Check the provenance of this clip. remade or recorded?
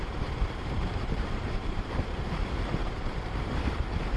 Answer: remade